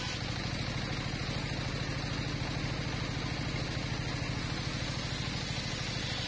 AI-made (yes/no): no